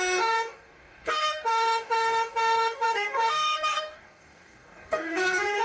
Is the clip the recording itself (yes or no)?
no